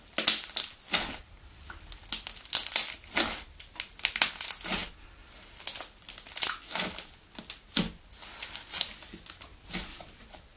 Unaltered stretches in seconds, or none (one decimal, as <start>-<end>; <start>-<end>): 0.0-10.6